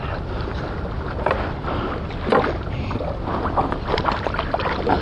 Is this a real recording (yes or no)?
yes